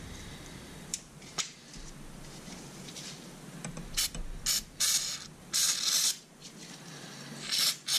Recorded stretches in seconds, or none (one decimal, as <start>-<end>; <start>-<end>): 0.0-0.9; 1.9-8.0